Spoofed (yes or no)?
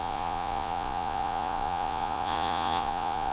yes